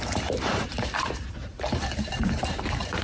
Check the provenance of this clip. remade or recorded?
remade